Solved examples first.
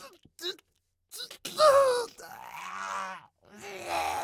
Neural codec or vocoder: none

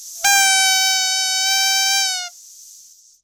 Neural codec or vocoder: none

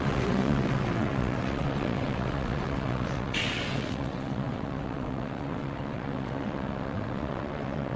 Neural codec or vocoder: vocoder, WaveNeXt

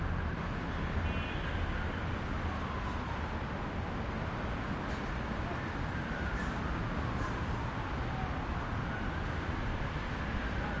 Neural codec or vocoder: none